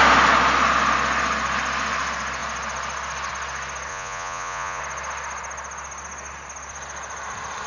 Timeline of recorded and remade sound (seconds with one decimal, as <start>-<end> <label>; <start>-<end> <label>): 0.0-3.9 recorded; 3.9-4.8 remade; 4.8-7.7 recorded